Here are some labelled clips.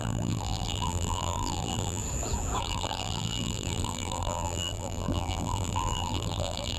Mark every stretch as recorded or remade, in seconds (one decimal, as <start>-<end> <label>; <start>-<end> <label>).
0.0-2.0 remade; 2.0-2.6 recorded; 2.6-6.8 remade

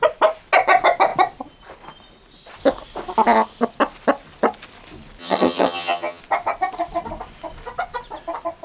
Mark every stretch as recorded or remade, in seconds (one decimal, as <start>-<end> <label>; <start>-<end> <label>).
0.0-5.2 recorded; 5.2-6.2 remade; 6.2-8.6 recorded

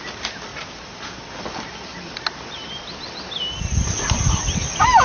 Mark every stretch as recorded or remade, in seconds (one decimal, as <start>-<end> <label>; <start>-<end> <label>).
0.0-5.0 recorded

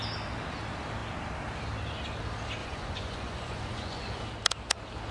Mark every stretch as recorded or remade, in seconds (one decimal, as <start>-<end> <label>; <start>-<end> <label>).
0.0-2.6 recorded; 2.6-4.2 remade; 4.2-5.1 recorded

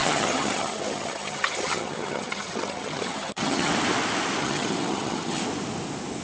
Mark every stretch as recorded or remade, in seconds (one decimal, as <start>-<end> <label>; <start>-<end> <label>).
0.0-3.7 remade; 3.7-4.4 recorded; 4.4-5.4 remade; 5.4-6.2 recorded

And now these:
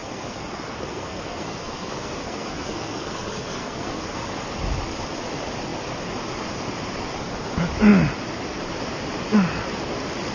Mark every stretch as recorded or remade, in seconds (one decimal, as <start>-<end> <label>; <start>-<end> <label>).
0.0-4.3 remade; 4.3-10.3 recorded

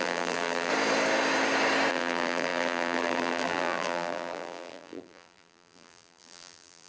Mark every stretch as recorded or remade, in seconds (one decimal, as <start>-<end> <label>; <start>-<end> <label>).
0.0-0.7 remade; 0.7-1.9 recorded; 1.9-6.9 remade

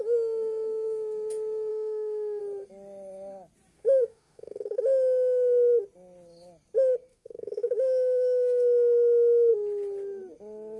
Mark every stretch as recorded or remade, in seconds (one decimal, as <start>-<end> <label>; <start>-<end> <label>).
0.0-1.7 recorded; 1.7-2.4 remade; 2.4-3.7 recorded; 3.7-4.8 remade; 4.8-7.1 recorded; 7.1-9.5 remade; 9.5-10.8 recorded